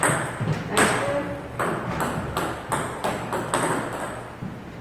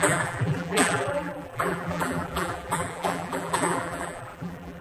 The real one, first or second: first